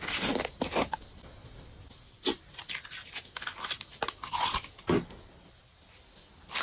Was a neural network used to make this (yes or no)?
no